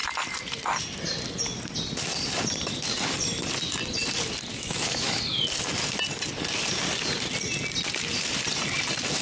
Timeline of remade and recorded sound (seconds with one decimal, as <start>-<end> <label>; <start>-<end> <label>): 0.0-4.5 recorded; 4.5-5.2 remade; 5.2-9.2 recorded